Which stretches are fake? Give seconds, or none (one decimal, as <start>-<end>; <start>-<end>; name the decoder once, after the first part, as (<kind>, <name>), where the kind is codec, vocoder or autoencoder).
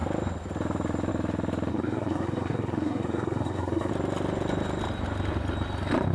1.7-3.9 (codec, SNAC)